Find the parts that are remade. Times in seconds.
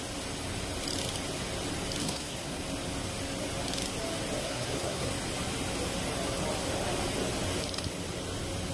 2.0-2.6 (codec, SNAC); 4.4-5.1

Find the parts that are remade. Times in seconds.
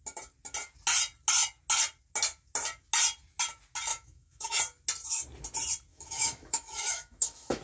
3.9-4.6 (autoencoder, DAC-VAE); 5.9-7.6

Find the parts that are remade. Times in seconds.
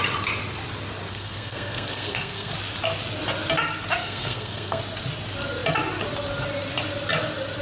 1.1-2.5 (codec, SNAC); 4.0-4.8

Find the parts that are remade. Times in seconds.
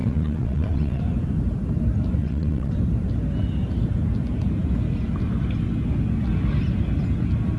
0.0-1.0 (vocoder, WaveNeXt); 2.2-2.7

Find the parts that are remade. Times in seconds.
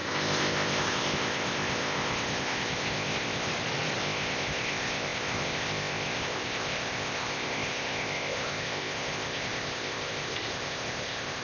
0.0-3.5 (codec, ZipCodec); 4.0-11.4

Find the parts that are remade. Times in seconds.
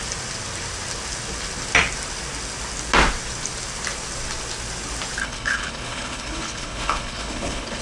5.2-7.8 (codec, HILCodec)